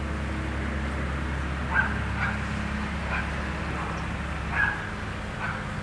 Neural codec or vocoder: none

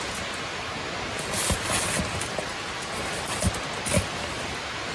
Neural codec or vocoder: none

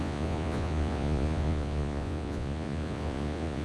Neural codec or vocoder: vocoder, Vocos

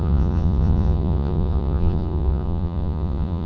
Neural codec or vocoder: vocoder, Vocos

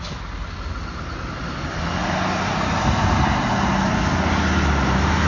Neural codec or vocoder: none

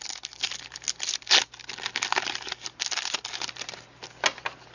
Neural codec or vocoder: none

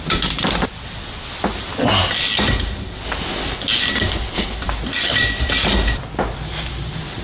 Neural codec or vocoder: none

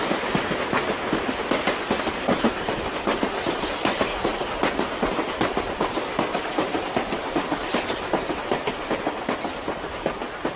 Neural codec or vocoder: none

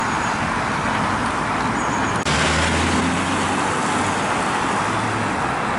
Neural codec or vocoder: none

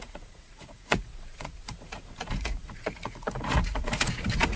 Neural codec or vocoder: vocoder, Vocos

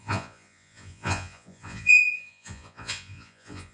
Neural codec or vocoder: vocoder, Vocos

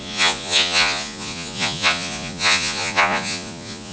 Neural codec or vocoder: vocoder, Vocos